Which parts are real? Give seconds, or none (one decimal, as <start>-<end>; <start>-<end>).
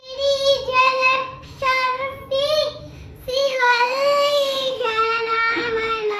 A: 0.0-0.8; 2.2-2.8